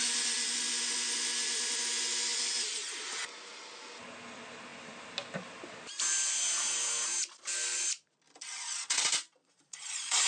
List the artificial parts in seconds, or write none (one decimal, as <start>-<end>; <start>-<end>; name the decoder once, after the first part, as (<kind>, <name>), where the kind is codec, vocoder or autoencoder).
9.4-10.3 (vocoder, Vocos)